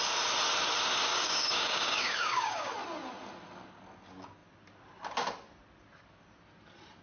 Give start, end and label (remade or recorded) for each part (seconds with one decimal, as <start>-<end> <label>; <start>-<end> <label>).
0.0-1.1 recorded; 1.1-2.7 remade; 2.7-7.0 recorded